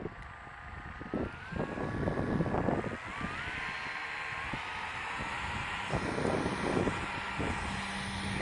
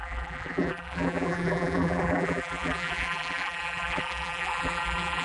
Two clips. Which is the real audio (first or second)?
first